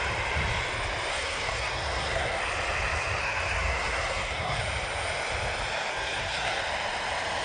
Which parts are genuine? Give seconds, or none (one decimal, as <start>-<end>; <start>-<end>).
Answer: 0.0-1.1; 2.4-3.2; 4.6-5.9; 6.6-7.4